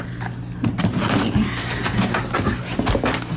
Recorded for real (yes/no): yes